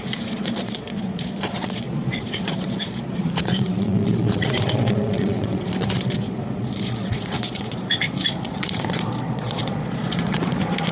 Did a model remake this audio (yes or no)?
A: yes